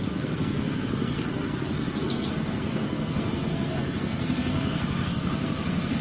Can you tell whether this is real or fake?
fake